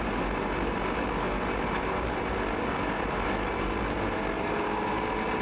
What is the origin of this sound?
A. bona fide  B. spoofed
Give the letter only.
A